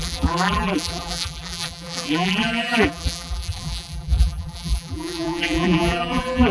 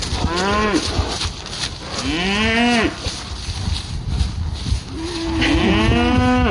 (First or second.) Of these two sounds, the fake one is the first